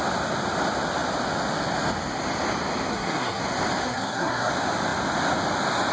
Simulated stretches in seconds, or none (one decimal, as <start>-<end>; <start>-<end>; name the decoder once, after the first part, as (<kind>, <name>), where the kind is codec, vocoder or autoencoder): 2.9-3.4 (codec, SNAC); 3.8-4.5